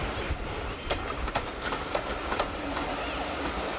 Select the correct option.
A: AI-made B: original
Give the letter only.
B